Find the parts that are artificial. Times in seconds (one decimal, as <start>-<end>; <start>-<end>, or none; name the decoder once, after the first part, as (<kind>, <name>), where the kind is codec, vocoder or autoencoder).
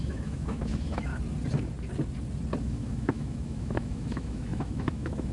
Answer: 0.0-1.1 (autoencoder, DAC-VAE); 2.6-5.3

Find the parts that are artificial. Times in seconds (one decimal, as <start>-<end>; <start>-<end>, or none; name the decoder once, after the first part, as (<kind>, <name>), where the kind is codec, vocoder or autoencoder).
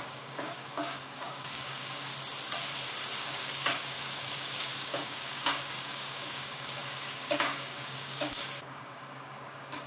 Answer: 0.0-2.1 (codec, DAC); 3.2-9.9